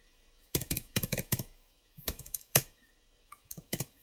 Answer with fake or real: fake